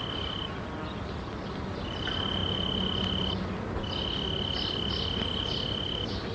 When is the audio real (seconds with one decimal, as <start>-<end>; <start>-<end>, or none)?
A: 0.0-6.3